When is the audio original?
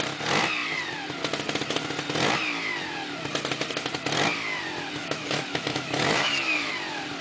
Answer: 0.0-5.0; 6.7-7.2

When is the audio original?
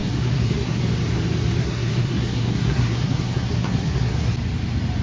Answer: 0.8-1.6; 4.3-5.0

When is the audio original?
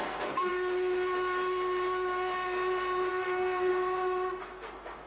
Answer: 0.5-3.1; 3.7-4.4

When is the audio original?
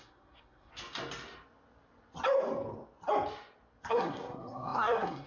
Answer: 0.7-3.9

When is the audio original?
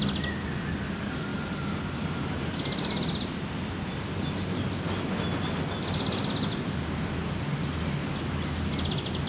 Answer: 0.0-9.3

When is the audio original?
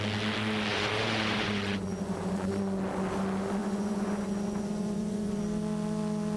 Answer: 0.0-0.7; 2.5-3.6; 5.4-6.4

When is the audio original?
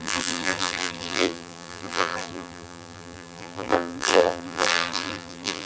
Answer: none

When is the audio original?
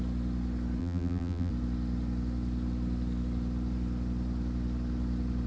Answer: 0.0-0.8; 1.5-5.5